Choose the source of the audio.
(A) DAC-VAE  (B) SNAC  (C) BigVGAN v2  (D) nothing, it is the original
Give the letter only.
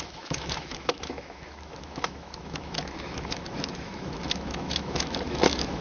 A